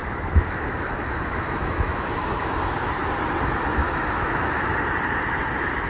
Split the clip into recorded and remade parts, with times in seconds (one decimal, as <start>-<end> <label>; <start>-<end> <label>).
0.0-2.9 remade; 2.9-3.8 recorded; 3.8-4.7 remade; 4.7-5.9 recorded